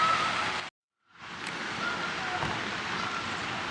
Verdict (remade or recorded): recorded